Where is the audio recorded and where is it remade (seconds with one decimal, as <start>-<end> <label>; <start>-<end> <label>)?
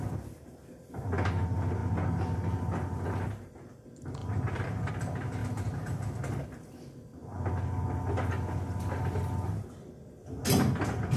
0.0-4.2 recorded; 4.2-4.9 remade; 4.9-5.4 recorded; 5.4-6.2 remade; 6.2-11.2 recorded